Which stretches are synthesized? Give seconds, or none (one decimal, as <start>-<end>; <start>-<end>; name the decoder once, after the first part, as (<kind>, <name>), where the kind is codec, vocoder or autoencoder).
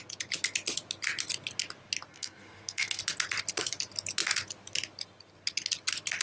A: 2.1-3.0 (codec, SNAC)